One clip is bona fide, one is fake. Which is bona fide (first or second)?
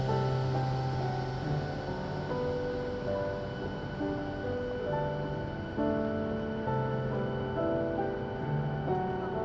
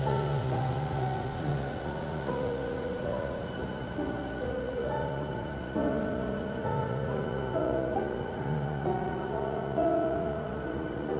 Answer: first